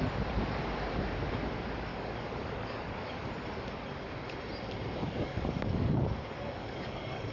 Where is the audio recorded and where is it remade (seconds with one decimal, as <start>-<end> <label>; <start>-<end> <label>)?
0.0-1.9 recorded; 1.9-3.3 remade; 3.3-5.0 recorded; 5.0-7.3 remade